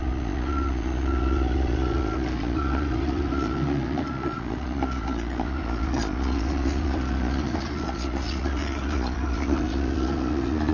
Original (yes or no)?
no